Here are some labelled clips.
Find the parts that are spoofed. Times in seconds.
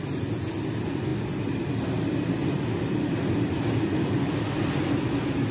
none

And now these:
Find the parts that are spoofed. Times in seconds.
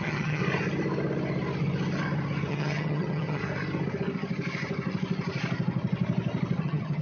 0.0-0.4; 2.5-3.4; 6.6-7.0